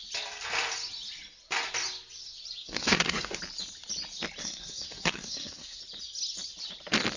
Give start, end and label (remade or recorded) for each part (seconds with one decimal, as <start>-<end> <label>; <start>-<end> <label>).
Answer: 0.0-2.6 recorded; 2.6-3.4 remade; 3.4-4.4 recorded; 4.4-5.8 remade; 5.8-7.2 recorded